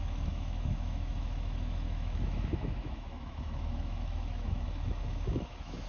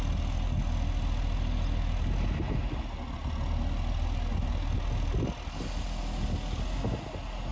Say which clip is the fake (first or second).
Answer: first